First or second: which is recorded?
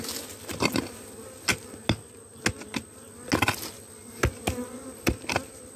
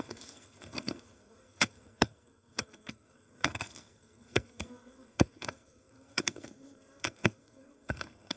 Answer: first